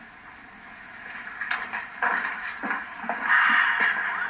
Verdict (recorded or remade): recorded